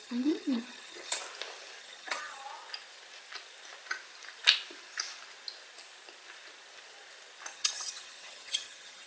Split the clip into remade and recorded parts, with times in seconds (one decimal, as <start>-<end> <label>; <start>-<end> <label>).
0.0-1.2 remade; 1.2-1.8 recorded; 1.8-2.4 remade; 2.4-7.5 recorded; 7.5-9.1 remade